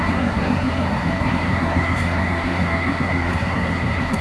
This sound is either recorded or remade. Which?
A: remade